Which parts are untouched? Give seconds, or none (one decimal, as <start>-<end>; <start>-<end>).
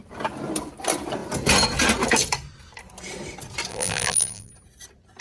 0.0-3.7; 4.5-5.2